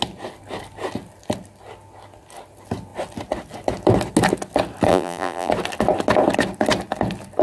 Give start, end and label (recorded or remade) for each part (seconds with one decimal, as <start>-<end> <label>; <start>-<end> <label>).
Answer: 0.0-4.9 recorded; 4.9-5.5 remade; 5.5-7.4 recorded